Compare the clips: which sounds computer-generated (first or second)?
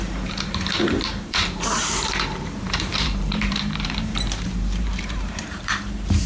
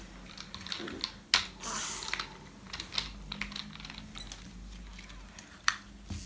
first